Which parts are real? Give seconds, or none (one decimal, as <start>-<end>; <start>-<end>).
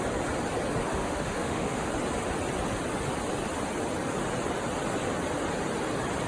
0.0-0.9; 1.9-6.3